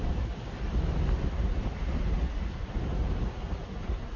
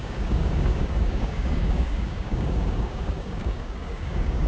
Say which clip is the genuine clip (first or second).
first